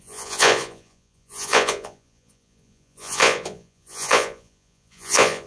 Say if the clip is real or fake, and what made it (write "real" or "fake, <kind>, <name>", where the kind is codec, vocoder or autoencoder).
fake, vocoder, Vocos